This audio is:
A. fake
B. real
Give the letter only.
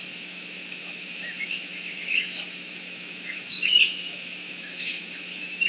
A